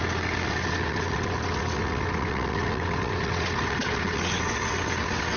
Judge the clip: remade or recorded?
remade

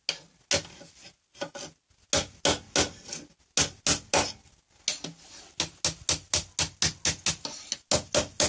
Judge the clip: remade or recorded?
recorded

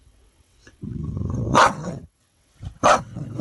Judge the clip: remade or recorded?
remade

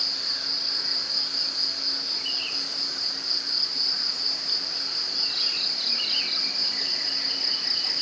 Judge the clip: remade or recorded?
recorded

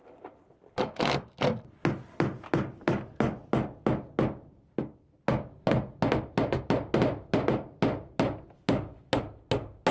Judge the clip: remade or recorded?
recorded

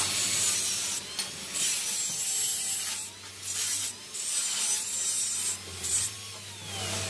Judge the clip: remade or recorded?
recorded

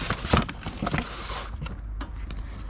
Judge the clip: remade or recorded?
recorded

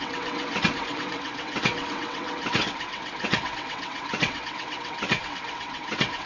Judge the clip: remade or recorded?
remade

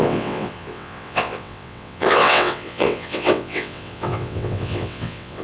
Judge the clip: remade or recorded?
remade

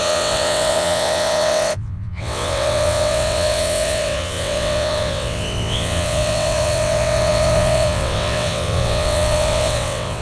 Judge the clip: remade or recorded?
remade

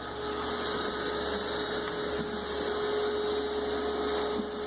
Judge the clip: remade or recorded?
recorded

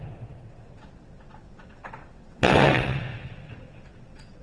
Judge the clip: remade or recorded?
remade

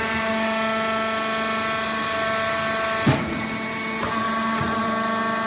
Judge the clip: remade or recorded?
recorded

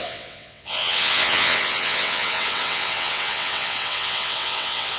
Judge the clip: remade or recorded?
remade